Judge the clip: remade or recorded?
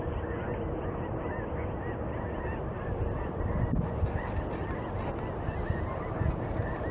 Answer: recorded